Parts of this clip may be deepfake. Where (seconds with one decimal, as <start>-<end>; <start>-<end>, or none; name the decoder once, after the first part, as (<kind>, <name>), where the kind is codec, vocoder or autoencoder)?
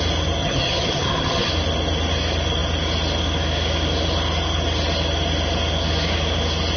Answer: 0.4-1.5 (vocoder, HiFi-GAN)